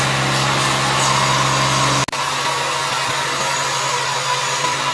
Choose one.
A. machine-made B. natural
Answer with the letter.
B